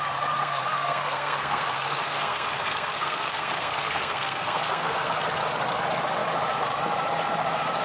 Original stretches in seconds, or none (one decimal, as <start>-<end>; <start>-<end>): 0.0-0.4; 5.1-7.8

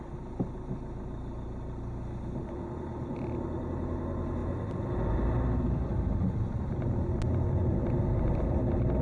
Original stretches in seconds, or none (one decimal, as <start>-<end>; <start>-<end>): 0.0-4.4; 5.0-9.0

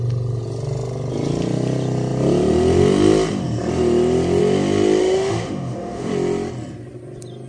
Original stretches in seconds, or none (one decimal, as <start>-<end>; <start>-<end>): 0.0-5.0; 6.1-7.5

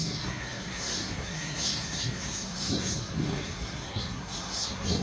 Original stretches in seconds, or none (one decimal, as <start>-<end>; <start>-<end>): none

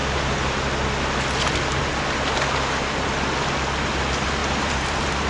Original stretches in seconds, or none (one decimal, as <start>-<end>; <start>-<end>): 0.0-4.4

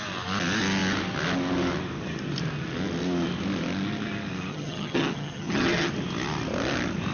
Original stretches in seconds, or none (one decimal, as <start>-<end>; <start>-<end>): 0.0-4.5; 5.9-7.1